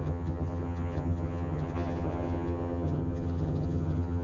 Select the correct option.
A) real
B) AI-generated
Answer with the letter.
B